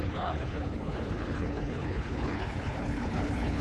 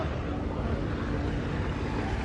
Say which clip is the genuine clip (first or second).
second